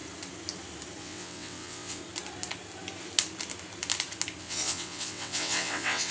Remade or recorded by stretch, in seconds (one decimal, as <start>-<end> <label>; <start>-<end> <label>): 0.0-1.0 recorded; 1.0-2.0 remade; 2.0-4.4 recorded; 4.4-6.1 remade